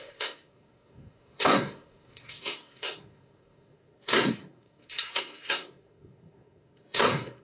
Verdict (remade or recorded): remade